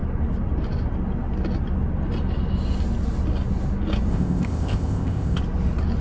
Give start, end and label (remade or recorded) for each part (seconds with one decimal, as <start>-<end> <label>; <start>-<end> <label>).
0.0-4.1 recorded; 4.1-5.4 remade; 5.4-6.0 recorded

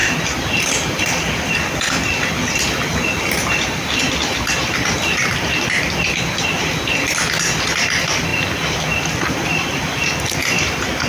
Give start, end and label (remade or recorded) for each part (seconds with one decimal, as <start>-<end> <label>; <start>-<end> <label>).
0.0-11.1 recorded

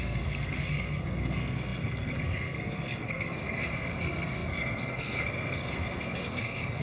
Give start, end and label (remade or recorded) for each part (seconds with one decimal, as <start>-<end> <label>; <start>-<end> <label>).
0.0-6.8 remade